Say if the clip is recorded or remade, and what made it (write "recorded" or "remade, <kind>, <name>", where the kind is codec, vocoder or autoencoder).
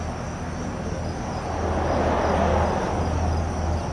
recorded